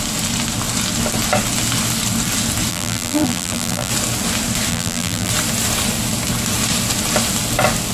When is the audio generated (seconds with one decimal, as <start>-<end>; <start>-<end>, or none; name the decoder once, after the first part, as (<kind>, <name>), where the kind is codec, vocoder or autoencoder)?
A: 2.7-3.9 (vocoder, BigVGAN v2); 4.7-5.3